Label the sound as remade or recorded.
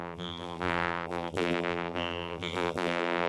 remade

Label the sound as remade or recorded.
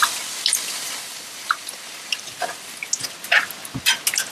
recorded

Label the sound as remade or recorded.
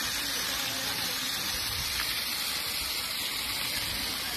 remade